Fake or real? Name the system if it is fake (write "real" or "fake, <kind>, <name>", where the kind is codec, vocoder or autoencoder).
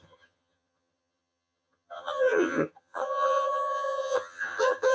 fake, vocoder, HiFi-GAN